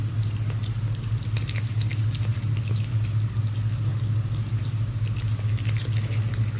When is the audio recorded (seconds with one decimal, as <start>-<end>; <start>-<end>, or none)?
0.0-6.6